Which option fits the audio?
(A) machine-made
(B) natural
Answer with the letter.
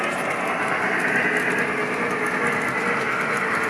B